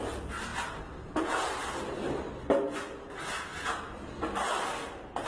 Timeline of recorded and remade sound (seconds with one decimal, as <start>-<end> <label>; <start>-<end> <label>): 0.0-5.3 recorded